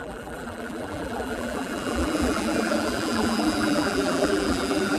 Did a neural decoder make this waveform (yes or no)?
yes